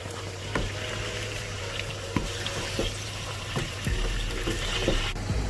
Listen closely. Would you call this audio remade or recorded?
remade